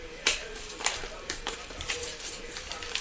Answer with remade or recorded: remade